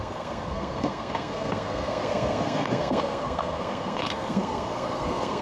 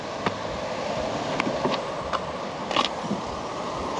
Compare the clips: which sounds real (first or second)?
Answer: second